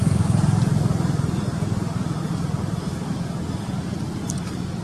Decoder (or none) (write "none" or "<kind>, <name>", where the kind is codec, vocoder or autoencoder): none